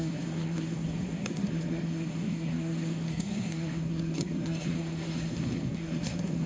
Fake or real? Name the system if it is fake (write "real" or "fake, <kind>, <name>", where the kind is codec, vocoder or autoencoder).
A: fake, codec, SNAC